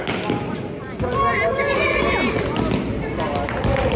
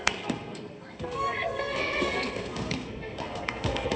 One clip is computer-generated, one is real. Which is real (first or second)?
first